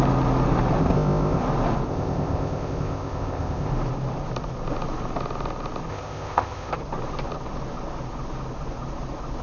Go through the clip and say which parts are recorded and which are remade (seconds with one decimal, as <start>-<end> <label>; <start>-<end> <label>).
0.0-0.8 recorded; 0.8-1.4 remade; 1.4-1.9 recorded; 1.9-3.7 remade; 3.7-5.9 recorded; 5.9-6.7 remade; 6.7-9.4 recorded